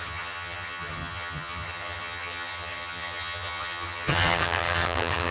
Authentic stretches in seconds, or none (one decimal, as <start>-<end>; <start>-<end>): none